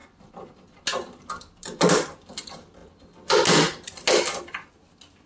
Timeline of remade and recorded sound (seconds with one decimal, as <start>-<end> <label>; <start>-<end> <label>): 0.0-5.3 recorded